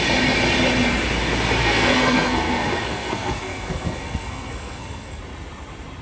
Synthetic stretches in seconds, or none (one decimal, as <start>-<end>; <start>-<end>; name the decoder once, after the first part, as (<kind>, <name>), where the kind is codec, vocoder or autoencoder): 1.6-5.2 (codec, SNAC)